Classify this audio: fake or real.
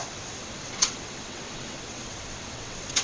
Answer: fake